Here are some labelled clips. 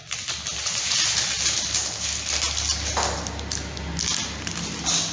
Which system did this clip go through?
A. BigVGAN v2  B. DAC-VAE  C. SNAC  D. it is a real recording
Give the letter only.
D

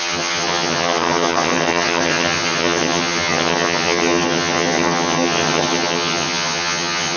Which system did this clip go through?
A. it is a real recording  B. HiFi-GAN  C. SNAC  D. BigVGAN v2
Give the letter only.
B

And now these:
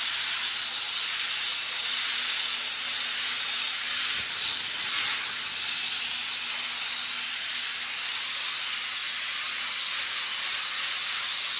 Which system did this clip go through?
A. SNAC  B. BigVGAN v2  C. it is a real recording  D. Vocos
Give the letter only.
C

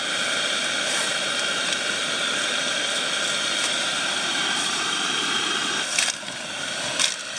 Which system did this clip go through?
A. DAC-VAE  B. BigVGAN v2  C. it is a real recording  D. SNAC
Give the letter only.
B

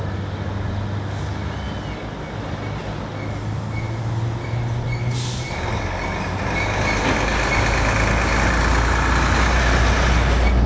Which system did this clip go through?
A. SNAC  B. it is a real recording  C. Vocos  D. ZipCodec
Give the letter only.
B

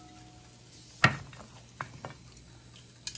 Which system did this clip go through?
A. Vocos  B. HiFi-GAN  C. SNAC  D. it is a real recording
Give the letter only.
D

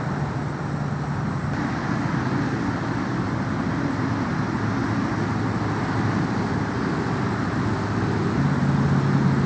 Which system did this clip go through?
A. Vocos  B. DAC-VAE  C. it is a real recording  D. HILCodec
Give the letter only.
C